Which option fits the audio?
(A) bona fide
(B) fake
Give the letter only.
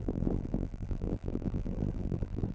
B